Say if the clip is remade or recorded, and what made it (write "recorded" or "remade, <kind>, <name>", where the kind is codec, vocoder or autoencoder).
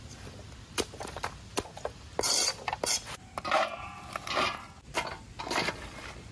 recorded